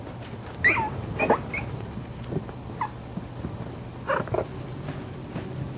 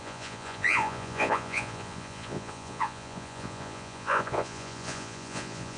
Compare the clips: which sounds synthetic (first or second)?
second